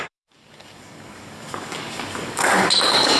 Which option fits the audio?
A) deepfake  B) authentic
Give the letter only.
A